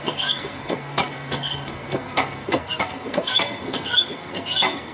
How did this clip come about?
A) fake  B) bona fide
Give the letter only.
A